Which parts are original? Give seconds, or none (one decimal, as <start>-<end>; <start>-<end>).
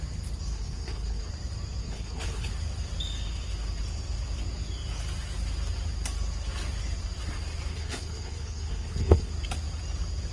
0.0-0.5; 1.3-1.8; 2.5-7.7; 9.3-10.3